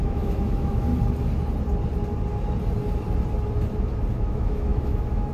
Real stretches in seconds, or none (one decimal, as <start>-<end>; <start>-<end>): 0.9-4.1